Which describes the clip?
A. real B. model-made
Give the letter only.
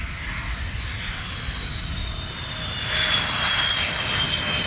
A